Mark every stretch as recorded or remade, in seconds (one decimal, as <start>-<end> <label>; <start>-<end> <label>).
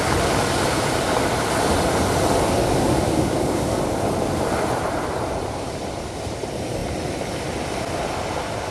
0.0-2.6 recorded; 2.6-3.8 remade; 3.8-8.7 recorded